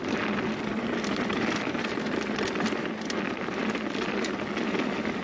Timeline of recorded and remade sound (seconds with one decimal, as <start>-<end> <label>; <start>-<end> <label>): 0.0-0.5 recorded; 0.5-3.6 remade; 3.6-5.2 recorded